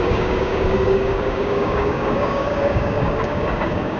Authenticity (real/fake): fake